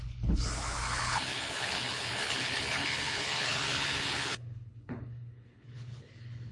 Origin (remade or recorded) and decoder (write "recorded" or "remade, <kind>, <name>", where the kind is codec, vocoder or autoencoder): remade, codec, HILCodec